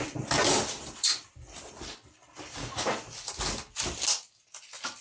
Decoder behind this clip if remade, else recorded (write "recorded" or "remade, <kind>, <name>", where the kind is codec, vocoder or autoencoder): recorded